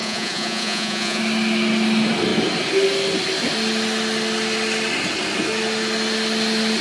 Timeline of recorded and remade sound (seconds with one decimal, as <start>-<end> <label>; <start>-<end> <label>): 0.0-1.2 remade; 1.2-6.8 recorded